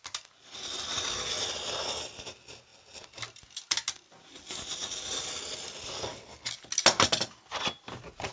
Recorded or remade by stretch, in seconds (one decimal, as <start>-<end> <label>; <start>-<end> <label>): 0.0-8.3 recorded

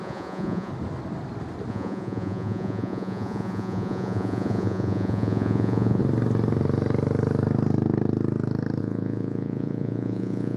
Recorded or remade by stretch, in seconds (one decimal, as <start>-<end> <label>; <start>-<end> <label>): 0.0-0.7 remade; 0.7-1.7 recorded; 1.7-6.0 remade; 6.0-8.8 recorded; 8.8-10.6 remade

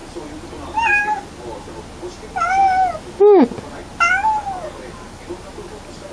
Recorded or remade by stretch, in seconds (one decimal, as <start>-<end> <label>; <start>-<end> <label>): 0.0-6.1 recorded

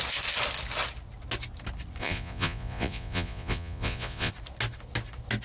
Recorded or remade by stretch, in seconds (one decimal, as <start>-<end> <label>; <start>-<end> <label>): 0.0-2.0 recorded; 2.0-4.3 remade; 4.3-5.4 recorded

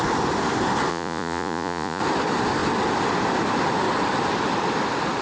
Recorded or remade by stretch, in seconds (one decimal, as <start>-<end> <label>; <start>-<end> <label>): 0.0-0.9 recorded; 0.9-2.0 remade; 2.0-5.2 recorded

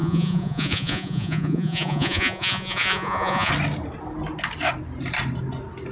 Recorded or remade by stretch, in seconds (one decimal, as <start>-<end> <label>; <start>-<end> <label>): 0.0-3.5 remade; 3.5-5.9 recorded

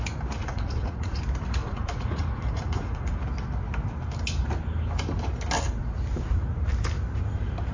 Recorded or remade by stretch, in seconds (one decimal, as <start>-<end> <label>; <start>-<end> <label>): 0.0-0.4 recorded; 0.4-1.2 remade; 1.2-1.6 recorded; 1.6-3.1 remade; 3.1-7.7 recorded